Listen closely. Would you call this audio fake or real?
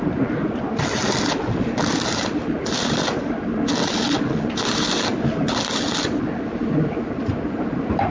real